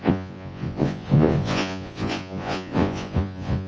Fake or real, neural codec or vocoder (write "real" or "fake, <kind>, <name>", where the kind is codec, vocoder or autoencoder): fake, vocoder, Vocos